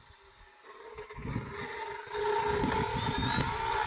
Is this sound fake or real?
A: real